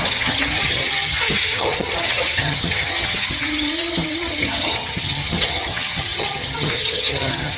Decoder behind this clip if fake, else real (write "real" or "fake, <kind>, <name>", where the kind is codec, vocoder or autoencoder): fake, vocoder, HiFi-GAN